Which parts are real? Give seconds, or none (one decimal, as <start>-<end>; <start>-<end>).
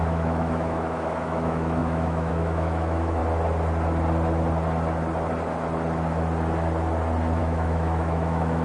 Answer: 3.2-7.4